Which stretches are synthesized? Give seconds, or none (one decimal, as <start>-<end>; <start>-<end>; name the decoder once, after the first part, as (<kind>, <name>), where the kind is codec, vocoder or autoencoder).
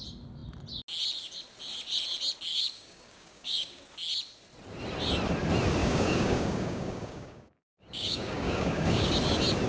2.5-3.8 (codec, DAC); 5.8-9.1